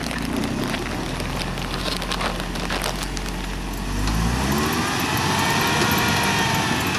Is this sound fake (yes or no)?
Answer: no